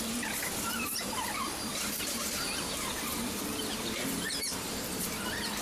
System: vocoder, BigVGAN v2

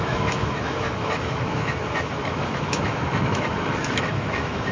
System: autoencoder, DAC-VAE